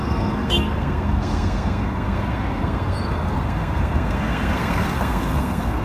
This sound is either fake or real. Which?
fake